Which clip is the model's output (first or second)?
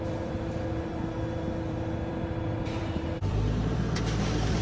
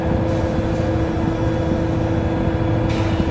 first